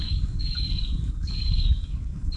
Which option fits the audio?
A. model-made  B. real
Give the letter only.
A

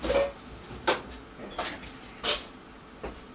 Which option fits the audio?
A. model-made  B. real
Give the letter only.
B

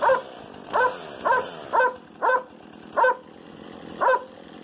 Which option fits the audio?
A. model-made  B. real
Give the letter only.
B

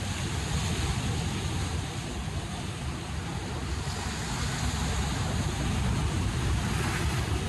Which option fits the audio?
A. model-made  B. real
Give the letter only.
B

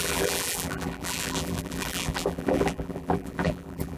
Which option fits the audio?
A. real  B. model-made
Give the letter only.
B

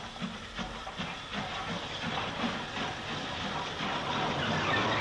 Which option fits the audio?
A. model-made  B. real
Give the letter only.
B